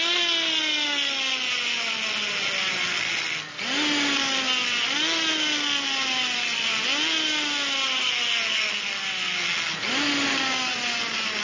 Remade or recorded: recorded